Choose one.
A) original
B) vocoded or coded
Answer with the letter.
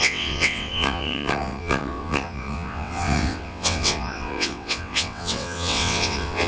B